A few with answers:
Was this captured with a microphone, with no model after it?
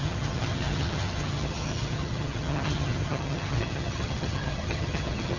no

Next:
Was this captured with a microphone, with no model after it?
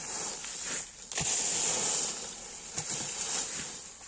yes